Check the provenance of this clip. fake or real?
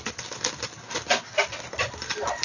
fake